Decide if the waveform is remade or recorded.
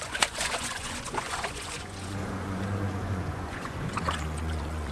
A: remade